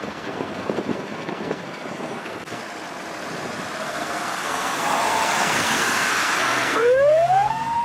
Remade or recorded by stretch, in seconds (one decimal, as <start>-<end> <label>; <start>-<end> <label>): 0.0-2.6 remade; 2.6-3.8 recorded; 3.8-7.8 remade